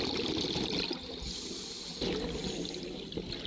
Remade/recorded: recorded